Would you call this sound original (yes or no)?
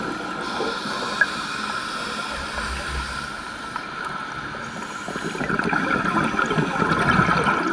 yes